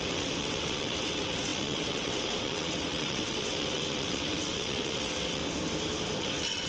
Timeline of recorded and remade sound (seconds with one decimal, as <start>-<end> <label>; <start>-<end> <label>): 0.0-5.4 remade; 5.4-6.2 recorded; 6.2-6.7 remade